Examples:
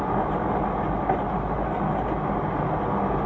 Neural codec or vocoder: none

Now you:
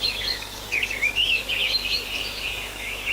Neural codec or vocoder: codec, DAC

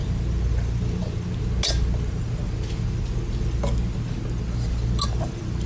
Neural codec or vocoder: none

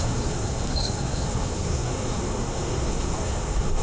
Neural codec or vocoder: codec, SNAC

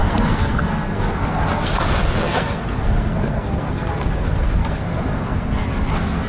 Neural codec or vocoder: codec, SNAC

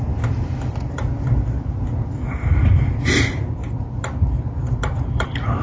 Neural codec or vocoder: none